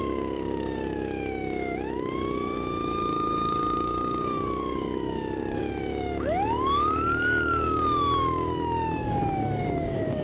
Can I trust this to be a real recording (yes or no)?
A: no